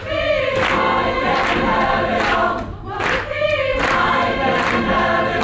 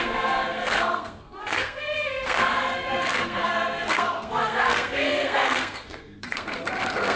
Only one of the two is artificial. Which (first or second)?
second